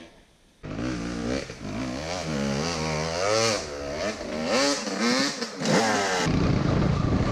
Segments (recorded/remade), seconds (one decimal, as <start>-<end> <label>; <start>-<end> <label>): 0.0-7.3 recorded

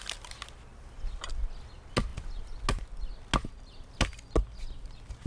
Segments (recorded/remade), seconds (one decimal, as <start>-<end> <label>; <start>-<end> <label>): 0.0-5.3 recorded